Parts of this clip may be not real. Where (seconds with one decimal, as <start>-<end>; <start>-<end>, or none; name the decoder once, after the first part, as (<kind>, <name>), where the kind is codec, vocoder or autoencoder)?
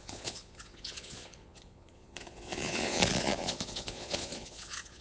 0.0-5.0 (vocoder, Vocos)